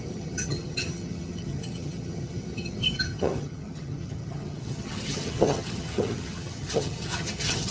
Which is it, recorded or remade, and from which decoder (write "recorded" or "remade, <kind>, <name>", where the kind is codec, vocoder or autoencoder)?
remade, vocoder, HiFi-GAN